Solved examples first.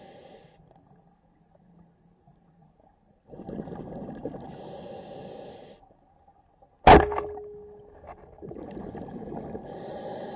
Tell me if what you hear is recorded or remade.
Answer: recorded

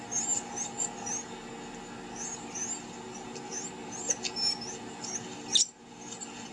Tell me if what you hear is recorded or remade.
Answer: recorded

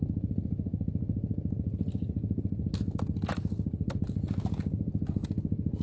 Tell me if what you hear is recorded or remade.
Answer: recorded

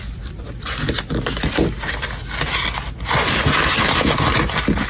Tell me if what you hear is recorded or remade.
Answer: recorded